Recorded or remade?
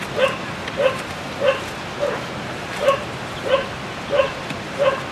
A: recorded